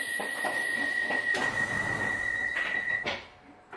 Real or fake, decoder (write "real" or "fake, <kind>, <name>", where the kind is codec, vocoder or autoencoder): real